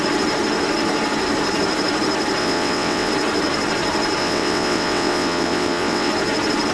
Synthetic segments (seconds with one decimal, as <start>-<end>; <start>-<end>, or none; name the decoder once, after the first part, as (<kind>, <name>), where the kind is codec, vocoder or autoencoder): 2.4-3.1 (vocoder, WaveNeXt); 4.2-6.1